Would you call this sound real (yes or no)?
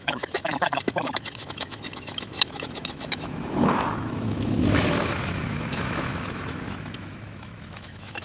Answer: no